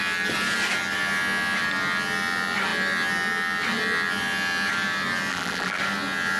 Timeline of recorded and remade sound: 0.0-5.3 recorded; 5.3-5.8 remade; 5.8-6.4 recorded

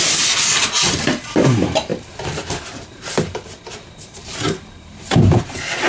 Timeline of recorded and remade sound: 0.0-1.9 recorded; 1.9-5.4 remade; 5.4-5.9 recorded

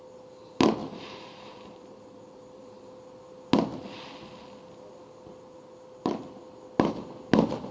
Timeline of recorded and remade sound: 0.0-0.8 recorded; 0.8-2.8 remade; 2.8-7.7 recorded

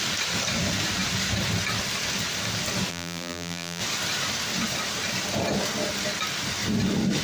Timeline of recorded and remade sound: 0.0-2.9 recorded; 2.9-3.8 remade; 3.8-7.2 recorded

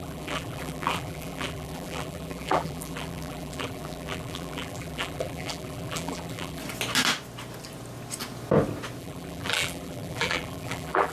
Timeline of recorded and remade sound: 0.0-6.6 remade; 6.6-9.0 recorded; 9.0-11.1 remade